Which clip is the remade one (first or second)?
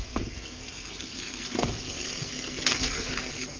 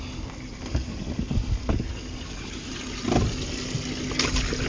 first